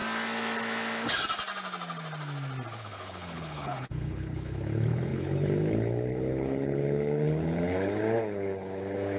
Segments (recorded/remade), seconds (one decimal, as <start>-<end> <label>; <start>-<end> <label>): 0.0-2.8 recorded; 2.8-9.2 remade